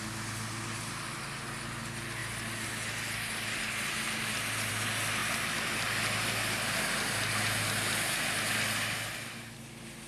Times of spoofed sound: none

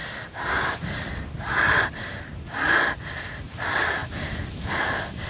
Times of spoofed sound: 3.2-4.0 (vocoder, BigVGAN v2)

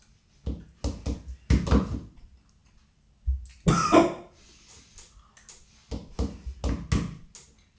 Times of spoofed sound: none

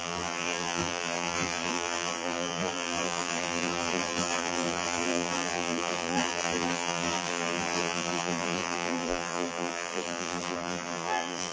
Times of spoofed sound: 0.0-11.5 (vocoder, BigVGAN v2)

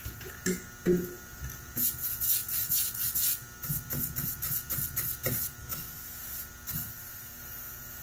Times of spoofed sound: 5.6-6.2 (codec, DAC)

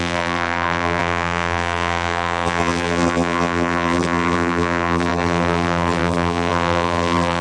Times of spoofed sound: 0.0-7.4 (vocoder, BigVGAN v2)

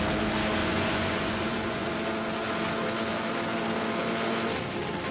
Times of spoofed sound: 0.6-1.9 (vocoder, Vocos)